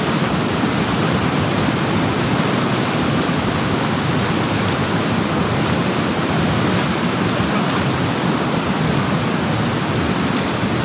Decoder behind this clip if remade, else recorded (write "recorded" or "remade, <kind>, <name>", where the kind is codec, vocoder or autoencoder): recorded